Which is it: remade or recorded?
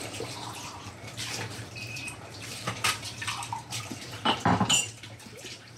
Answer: remade